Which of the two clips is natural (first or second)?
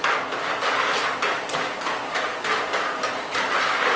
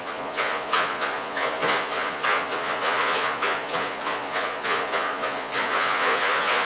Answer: first